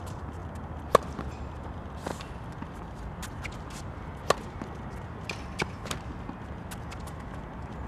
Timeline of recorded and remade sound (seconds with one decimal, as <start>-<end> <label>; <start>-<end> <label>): 0.0-0.4 remade; 0.4-1.2 recorded; 1.2-2.1 remade; 2.1-6.8 recorded; 6.8-7.9 remade

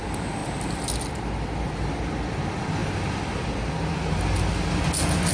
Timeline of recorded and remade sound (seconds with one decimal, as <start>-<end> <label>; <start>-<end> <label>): 0.0-5.3 recorded

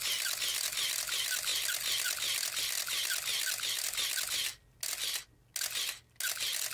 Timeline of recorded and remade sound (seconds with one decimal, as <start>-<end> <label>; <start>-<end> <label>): 0.0-6.7 recorded

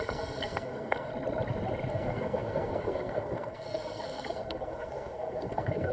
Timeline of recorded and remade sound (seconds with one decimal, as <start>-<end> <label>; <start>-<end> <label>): 0.0-1.1 remade; 1.1-1.9 recorded; 1.9-5.9 remade

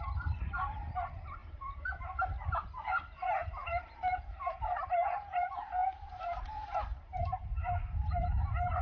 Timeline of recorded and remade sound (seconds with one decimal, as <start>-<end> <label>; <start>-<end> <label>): 0.0-8.8 remade

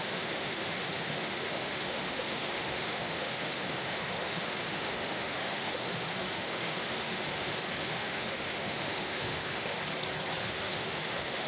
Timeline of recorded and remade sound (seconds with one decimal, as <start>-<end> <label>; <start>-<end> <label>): 0.0-9.8 remade; 9.8-10.4 recorded; 10.4-11.5 remade

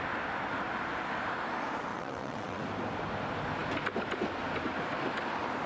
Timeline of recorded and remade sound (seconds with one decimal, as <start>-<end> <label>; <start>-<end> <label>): 0.0-1.9 recorded; 1.9-2.6 remade; 2.6-5.7 recorded

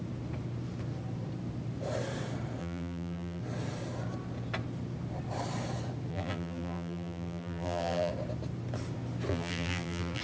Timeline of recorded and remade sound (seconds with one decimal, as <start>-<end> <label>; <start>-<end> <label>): 0.0-2.6 recorded; 2.6-3.4 remade; 3.4-6.1 recorded; 6.1-8.1 remade; 8.1-9.3 recorded; 9.3-10.2 remade